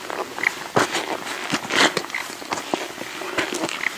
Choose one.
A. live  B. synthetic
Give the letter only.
A